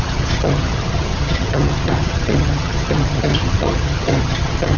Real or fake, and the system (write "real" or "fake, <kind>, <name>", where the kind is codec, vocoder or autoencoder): fake, vocoder, HiFi-GAN